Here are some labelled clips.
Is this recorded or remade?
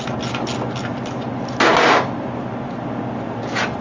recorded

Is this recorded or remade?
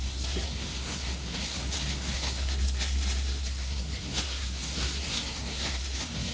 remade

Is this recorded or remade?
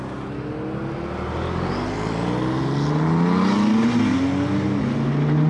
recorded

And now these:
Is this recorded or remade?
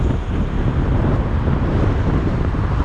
recorded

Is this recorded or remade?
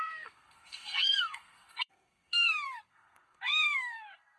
remade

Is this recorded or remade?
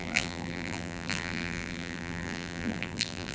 remade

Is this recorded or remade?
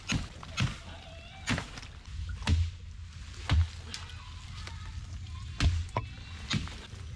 recorded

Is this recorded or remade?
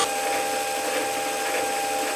recorded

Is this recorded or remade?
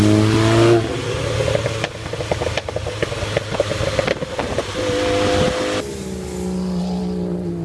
recorded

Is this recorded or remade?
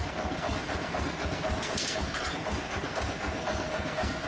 remade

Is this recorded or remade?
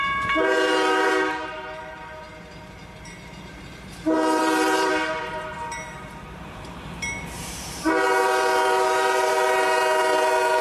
remade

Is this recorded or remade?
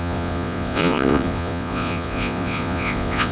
remade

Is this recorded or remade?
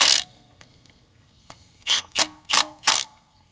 remade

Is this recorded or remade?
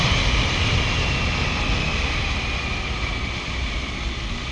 recorded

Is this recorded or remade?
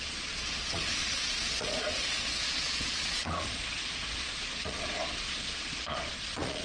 remade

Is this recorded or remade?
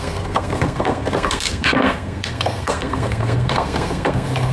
remade